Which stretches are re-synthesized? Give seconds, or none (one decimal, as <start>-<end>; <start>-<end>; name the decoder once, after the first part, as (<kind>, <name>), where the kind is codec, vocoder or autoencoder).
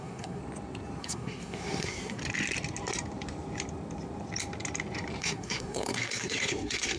0.0-0.4 (codec, SNAC); 1.0-2.2; 5.2-7.0